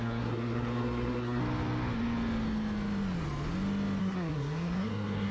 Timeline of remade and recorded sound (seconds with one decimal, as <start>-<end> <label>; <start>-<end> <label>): 0.0-1.4 remade; 1.4-4.0 recorded; 4.0-5.3 remade